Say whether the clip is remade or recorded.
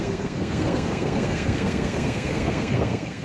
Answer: remade